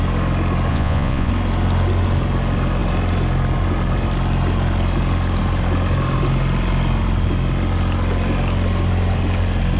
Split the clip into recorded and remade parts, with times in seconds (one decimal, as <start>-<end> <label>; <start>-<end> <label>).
0.0-0.7 recorded; 0.7-1.3 remade; 1.3-9.8 recorded